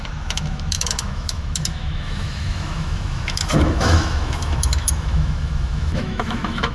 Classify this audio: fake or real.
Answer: fake